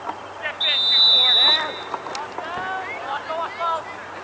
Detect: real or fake real